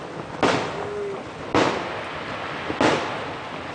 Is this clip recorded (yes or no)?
yes